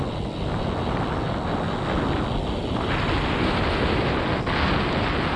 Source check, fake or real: real